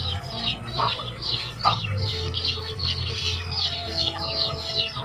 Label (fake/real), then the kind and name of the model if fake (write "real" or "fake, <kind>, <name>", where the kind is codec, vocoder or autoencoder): fake, codec, SNAC